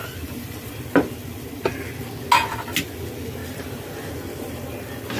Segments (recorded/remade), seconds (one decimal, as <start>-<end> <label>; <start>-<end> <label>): 0.0-0.7 remade; 0.7-3.4 recorded; 3.4-4.1 remade; 4.1-5.2 recorded